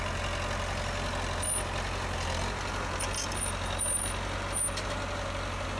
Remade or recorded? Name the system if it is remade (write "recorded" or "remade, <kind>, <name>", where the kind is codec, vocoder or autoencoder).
recorded